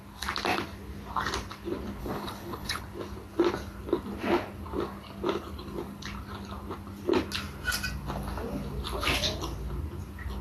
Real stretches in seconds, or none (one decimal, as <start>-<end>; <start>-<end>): 0.0-2.0; 2.8-10.4